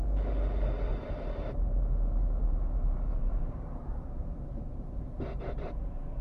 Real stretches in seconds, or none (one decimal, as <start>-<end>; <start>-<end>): 0.0-0.9; 1.8-2.2